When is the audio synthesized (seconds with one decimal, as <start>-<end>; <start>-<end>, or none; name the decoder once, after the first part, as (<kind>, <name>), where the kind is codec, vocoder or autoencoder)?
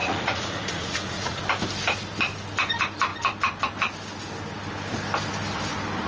0.0-1.4 (vocoder, Vocos)